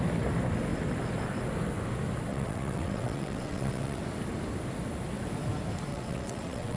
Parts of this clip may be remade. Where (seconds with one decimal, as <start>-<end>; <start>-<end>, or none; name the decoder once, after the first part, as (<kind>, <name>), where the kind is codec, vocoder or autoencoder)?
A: 2.3-4.0 (vocoder, WaveNeXt); 5.9-6.8